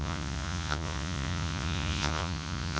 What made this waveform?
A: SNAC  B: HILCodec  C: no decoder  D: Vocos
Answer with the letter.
D